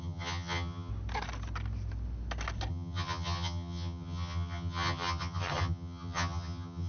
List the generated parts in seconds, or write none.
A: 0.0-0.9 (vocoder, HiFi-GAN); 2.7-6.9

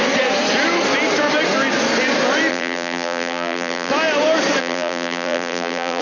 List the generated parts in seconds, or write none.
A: 2.5-3.9 (vocoder, BigVGAN v2); 4.6-6.0

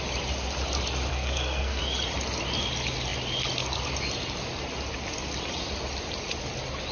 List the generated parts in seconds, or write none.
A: 1.1-1.8 (codec, SNAC)

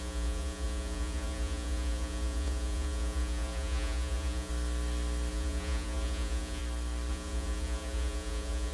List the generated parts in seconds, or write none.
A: 0.0-4.5 (vocoder, Vocos); 5.3-6.6; 7.1-8.7